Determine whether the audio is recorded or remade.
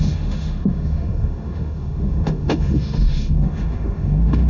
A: remade